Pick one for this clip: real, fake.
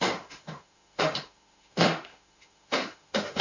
fake